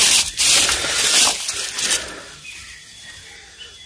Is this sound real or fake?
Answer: real